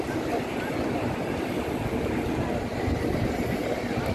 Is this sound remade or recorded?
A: recorded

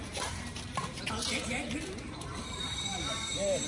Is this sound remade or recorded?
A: remade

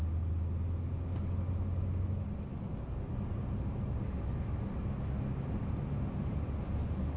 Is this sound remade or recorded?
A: recorded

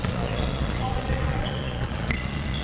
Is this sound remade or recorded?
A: remade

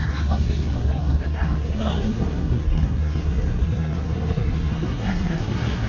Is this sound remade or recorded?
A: remade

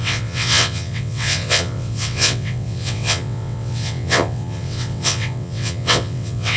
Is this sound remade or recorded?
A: remade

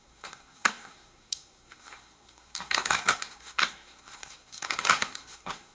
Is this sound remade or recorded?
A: remade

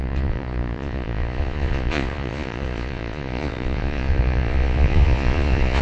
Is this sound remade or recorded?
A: remade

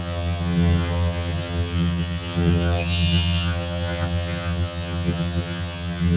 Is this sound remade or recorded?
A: remade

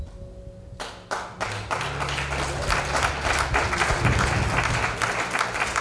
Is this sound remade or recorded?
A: recorded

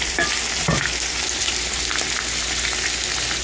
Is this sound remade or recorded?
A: recorded